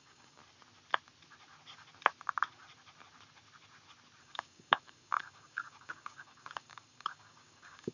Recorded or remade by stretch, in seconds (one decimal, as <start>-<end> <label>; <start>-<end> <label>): 0.0-0.4 remade; 0.4-4.2 recorded; 4.2-7.9 remade